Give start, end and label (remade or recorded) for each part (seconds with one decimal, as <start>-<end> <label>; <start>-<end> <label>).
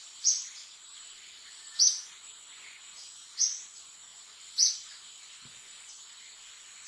0.0-0.5 recorded; 0.5-6.9 remade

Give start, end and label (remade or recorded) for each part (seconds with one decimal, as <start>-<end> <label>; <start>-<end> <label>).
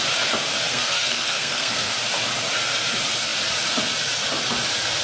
0.0-0.7 recorded; 0.7-1.9 remade; 1.9-5.0 recorded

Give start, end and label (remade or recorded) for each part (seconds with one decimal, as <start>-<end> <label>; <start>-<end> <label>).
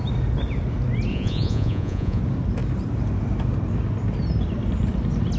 0.0-1.1 recorded; 1.1-2.2 remade; 2.2-5.4 recorded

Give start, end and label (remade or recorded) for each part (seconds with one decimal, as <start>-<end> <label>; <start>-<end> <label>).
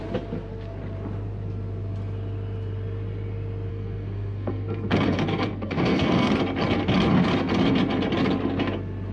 0.0-3.7 recorded; 3.7-6.3 remade; 6.3-9.1 recorded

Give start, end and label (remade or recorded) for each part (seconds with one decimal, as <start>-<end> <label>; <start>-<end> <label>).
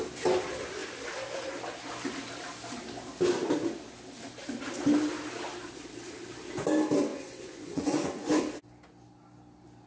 0.0-7.1 recorded; 7.1-8.4 remade; 8.4-9.9 recorded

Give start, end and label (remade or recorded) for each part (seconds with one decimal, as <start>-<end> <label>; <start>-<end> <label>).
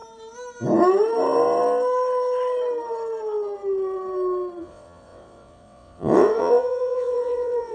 0.0-4.6 recorded; 4.6-7.7 remade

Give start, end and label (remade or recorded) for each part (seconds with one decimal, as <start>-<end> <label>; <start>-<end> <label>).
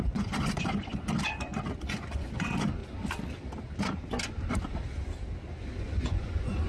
0.0-1.1 remade; 1.1-1.8 recorded; 1.8-2.8 remade; 2.8-5.8 recorded; 5.8-6.7 remade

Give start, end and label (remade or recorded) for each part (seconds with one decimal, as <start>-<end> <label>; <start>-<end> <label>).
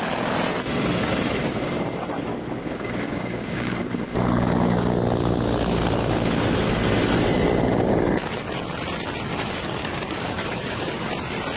0.0-2.3 recorded; 2.3-4.9 remade; 4.9-9.3 recorded; 9.3-11.1 remade; 11.1-11.6 recorded